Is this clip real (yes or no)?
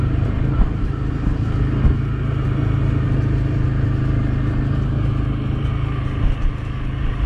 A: yes